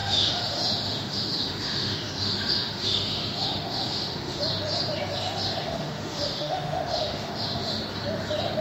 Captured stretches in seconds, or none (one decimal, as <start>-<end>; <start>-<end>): 4.4-5.6; 7.8-8.6